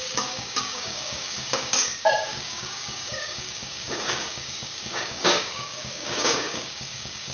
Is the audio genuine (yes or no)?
no